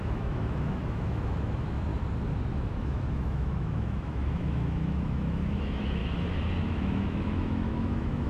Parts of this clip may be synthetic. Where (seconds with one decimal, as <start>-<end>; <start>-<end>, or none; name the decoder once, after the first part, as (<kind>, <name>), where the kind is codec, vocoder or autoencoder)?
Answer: 0.0-1.9 (autoencoder, DAC-VAE); 2.5-6.0; 6.6-8.3